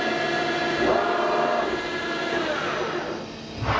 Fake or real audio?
real